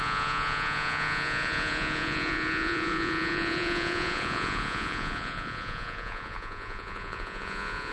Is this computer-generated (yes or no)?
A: yes